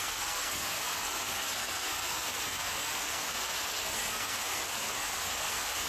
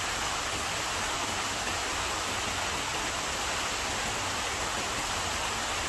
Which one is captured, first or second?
second